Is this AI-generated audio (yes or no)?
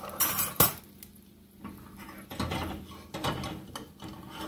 no